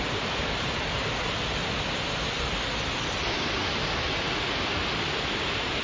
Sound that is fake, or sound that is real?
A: real